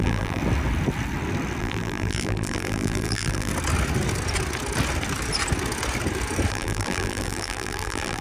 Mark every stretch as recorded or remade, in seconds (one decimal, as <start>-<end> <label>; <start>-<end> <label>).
0.0-0.4 remade; 0.4-1.6 recorded; 1.6-3.5 remade; 3.5-6.5 recorded; 6.5-8.2 remade